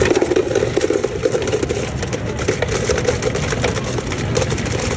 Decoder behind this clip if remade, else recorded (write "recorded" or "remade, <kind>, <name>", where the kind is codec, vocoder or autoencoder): recorded